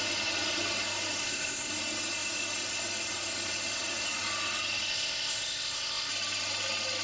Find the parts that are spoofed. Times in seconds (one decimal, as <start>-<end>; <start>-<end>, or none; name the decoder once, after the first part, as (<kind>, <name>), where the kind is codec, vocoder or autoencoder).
1.2-1.7 (codec, ZipCodec); 4.9-6.1